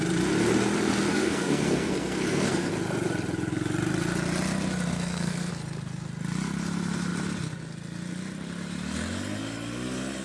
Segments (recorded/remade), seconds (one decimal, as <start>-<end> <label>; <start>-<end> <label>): 0.0-1.1 recorded; 1.1-2.7 remade; 2.7-4.9 recorded; 4.9-5.5 remade; 5.5-10.2 recorded